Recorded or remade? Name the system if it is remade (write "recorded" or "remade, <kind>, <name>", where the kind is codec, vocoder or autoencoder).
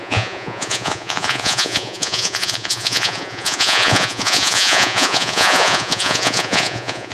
remade, vocoder, Vocos